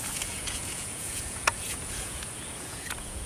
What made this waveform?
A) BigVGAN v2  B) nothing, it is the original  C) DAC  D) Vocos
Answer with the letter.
D